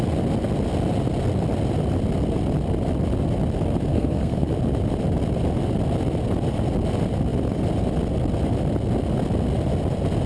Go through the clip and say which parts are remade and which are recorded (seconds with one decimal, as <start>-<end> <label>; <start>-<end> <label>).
0.0-3.9 recorded; 3.9-4.5 remade; 4.5-10.3 recorded